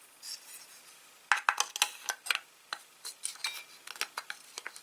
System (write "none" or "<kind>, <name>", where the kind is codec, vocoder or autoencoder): none